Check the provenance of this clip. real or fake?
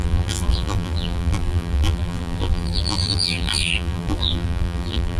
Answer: fake